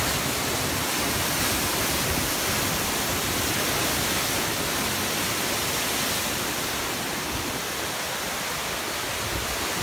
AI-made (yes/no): no